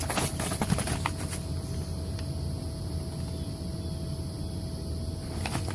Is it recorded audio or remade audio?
recorded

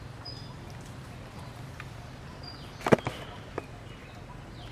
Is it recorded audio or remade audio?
recorded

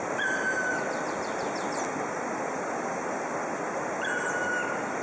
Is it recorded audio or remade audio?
remade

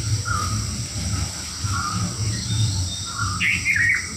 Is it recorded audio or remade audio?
recorded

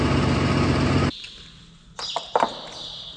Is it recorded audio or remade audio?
recorded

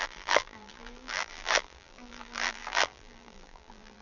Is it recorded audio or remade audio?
remade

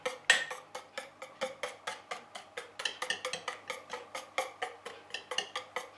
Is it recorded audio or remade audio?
recorded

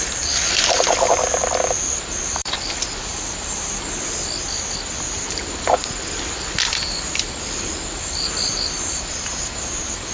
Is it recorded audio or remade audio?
remade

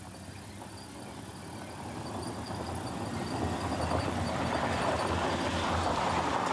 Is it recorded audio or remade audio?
recorded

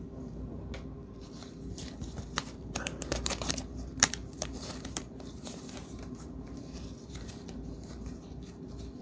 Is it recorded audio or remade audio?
remade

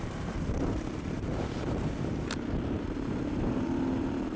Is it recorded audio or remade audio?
remade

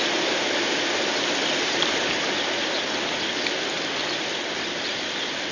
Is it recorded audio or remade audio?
recorded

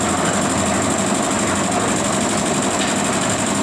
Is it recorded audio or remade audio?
recorded